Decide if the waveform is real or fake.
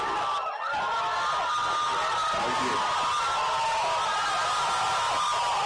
real